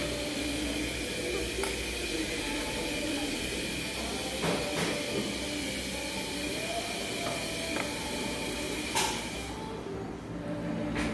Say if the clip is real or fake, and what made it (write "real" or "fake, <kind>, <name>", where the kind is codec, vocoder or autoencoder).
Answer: real